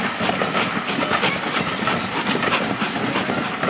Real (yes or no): yes